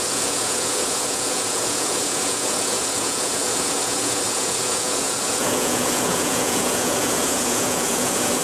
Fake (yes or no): yes